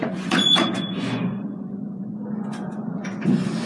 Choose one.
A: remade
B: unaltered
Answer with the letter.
A